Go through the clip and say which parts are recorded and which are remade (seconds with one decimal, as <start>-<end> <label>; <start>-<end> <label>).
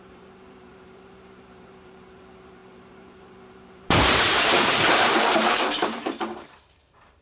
0.0-7.2 remade